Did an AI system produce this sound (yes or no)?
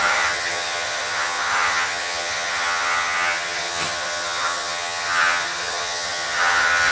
yes